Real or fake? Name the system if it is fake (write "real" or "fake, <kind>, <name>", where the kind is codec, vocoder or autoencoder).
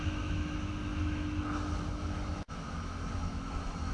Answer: fake, autoencoder, DAC-VAE